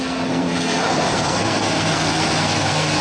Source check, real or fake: fake